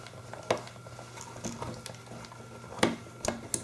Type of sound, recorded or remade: recorded